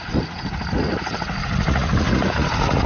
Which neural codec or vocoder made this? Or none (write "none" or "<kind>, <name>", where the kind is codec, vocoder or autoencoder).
vocoder, Vocos